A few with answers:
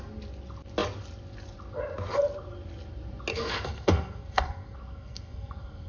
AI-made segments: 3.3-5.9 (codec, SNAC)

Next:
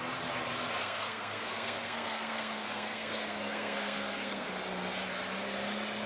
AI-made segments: 0.8-4.5 (codec, SNAC)